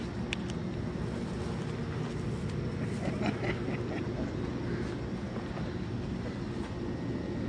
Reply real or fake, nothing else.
real